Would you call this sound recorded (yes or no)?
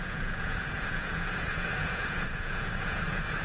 no